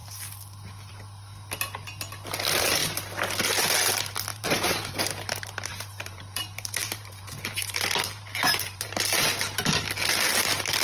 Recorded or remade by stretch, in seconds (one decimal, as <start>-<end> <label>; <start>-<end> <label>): 0.0-4.3 recorded; 4.3-4.9 remade; 4.9-5.7 recorded; 5.7-9.0 remade; 9.0-10.8 recorded